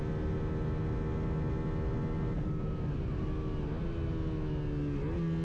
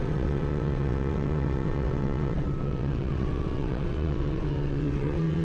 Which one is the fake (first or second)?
second